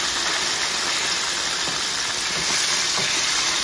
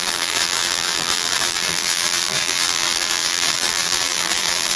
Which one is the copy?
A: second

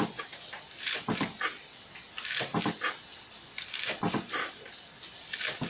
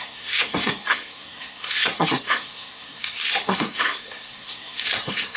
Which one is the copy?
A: second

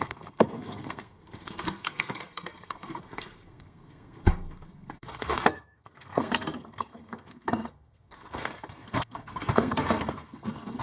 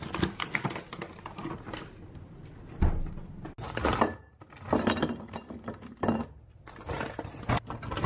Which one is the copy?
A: first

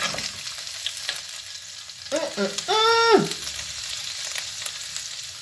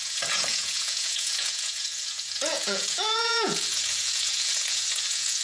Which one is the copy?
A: second